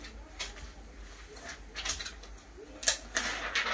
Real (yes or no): yes